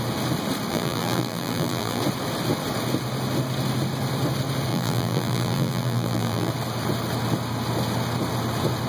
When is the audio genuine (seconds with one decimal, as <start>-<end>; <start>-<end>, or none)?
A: 0.0-0.7; 2.0-4.7; 6.5-8.9